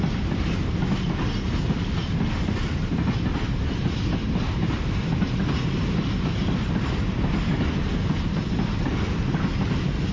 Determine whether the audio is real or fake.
real